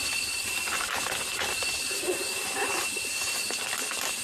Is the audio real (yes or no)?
yes